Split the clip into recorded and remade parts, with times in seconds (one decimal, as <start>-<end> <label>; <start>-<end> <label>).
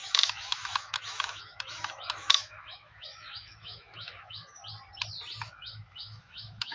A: 0.0-4.6 remade; 4.6-5.4 recorded; 5.4-6.7 remade